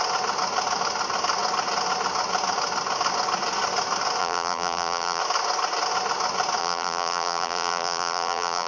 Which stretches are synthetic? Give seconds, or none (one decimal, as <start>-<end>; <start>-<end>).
4.2-5.2; 6.6-8.7